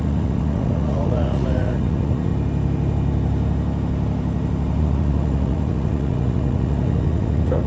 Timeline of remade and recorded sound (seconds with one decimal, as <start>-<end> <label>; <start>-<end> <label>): 0.0-2.3 remade; 2.3-4.8 recorded; 4.8-7.7 remade